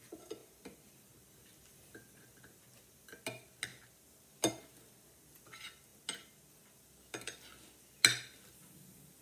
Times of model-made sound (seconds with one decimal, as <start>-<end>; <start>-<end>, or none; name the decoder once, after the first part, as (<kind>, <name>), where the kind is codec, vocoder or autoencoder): none